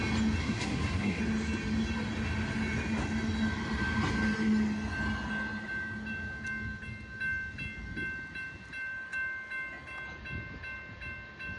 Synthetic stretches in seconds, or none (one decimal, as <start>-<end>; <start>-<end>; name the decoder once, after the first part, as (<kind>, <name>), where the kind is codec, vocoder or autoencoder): 0.4-1.2 (codec, SNAC)